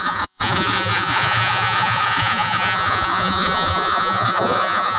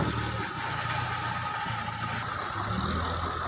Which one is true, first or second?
second